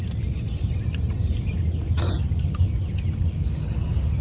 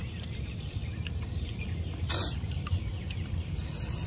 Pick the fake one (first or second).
second